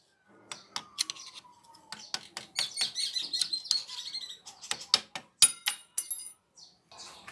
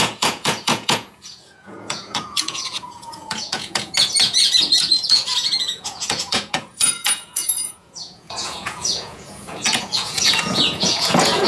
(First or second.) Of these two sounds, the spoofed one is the second